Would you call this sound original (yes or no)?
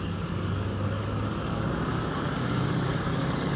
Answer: no